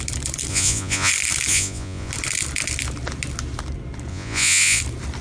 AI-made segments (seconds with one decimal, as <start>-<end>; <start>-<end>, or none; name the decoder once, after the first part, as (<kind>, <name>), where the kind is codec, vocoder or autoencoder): 0.5-1.1 (vocoder, Vocos); 1.5-2.1; 4.1-4.8